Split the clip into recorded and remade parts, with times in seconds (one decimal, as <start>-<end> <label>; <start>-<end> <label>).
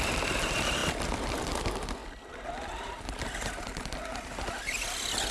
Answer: 0.0-5.3 recorded